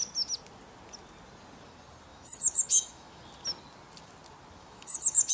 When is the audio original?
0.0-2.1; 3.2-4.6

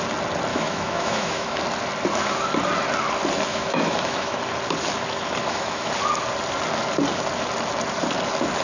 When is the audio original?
0.0-0.5; 1.6-3.5; 4.4-5.4; 5.9-8.6

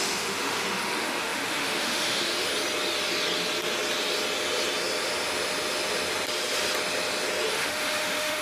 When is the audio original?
2.5-7.5

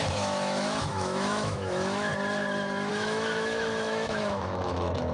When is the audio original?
2.1-2.9

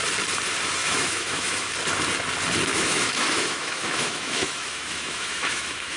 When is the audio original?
0.0-0.8; 1.7-2.7

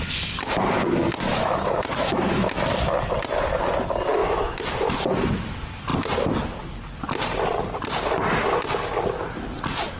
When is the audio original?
0.0-1.4; 2.7-4.2; 4.9-10.0

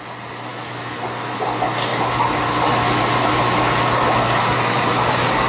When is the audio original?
0.0-0.5; 1.0-5.5

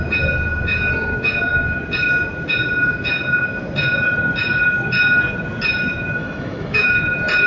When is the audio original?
0.0-6.2; 6.9-7.5